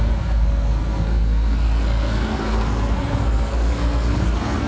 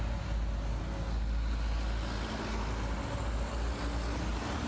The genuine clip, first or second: second